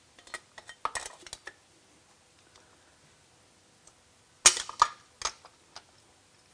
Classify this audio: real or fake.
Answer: real